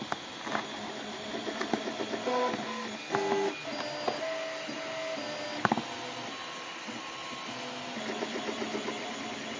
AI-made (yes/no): no